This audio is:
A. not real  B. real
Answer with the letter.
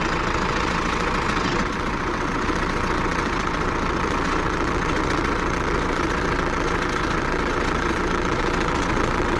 A